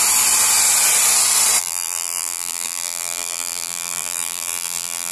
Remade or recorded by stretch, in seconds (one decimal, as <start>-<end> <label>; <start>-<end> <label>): 0.0-1.6 recorded; 1.6-5.1 remade